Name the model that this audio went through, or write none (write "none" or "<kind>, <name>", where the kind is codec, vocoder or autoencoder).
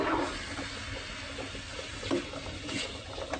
none